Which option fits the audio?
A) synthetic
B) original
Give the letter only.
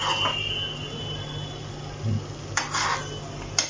B